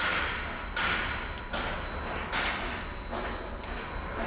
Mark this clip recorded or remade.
recorded